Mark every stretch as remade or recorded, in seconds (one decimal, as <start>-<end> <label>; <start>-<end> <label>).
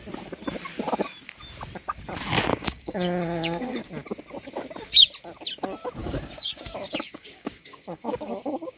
0.0-2.5 recorded; 2.5-3.9 remade; 3.9-6.0 recorded; 6.0-8.8 remade